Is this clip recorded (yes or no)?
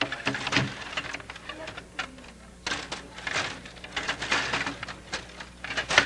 yes